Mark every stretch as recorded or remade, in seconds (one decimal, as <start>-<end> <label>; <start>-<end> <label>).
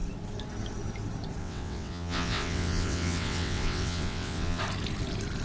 0.0-1.4 recorded; 1.4-4.6 remade; 4.6-5.4 recorded